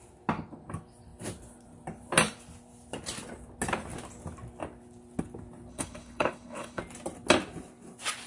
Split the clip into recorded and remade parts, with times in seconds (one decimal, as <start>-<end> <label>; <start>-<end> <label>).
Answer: 0.0-5.7 recorded; 5.7-6.8 remade; 6.8-8.3 recorded

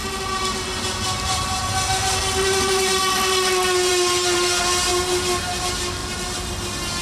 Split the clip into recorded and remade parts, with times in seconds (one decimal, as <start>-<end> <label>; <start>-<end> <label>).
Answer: 0.0-7.0 recorded